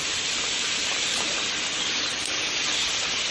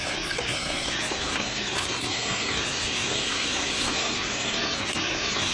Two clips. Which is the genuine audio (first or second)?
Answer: first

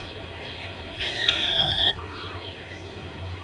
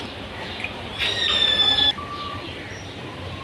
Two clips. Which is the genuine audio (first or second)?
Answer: second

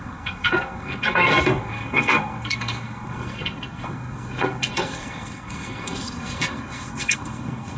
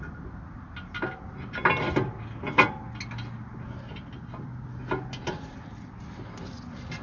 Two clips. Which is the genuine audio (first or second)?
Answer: second